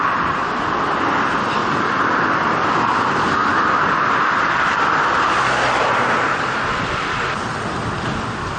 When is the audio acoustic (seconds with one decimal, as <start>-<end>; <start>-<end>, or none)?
0.0-1.6; 3.0-3.4; 7.9-8.6